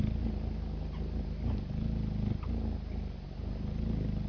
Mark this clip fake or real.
real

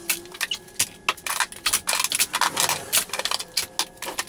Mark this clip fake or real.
real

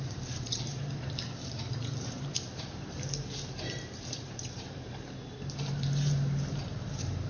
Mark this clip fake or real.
fake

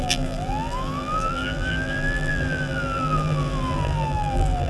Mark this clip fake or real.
fake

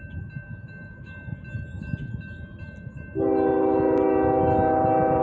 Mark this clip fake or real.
real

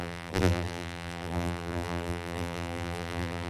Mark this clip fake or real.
fake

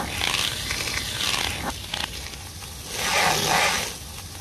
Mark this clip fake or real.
real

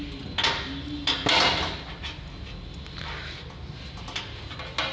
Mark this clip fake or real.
real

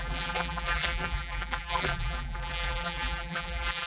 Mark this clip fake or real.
fake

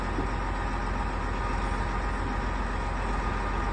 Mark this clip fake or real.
real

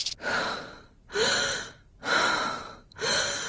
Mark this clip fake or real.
fake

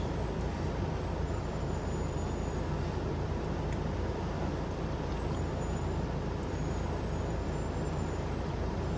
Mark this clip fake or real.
real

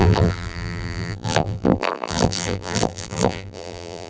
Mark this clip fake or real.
fake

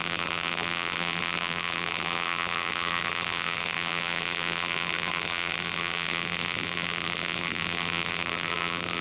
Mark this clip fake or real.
fake